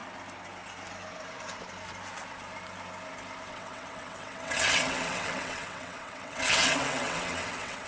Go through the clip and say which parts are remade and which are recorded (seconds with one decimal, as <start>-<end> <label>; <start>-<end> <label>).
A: 0.0-3.5 recorded; 3.5-7.9 remade